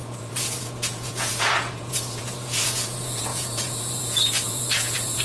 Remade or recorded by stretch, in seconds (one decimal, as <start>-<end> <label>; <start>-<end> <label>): 0.0-5.2 remade